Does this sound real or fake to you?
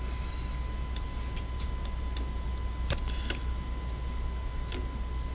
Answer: real